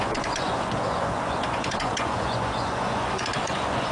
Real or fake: fake